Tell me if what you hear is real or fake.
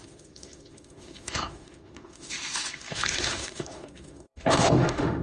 fake